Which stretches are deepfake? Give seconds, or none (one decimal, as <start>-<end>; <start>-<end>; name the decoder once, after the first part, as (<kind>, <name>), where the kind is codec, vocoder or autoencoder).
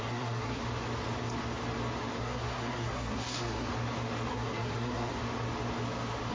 0.0-0.6 (codec, SNAC); 2.2-3.7; 4.3-5.1